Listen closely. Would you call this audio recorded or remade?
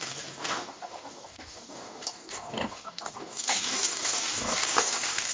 remade